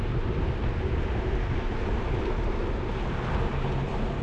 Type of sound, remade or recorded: recorded